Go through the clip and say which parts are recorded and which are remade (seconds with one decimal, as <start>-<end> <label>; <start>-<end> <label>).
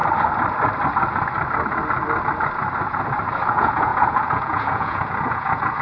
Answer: 0.0-3.5 recorded; 3.5-5.8 remade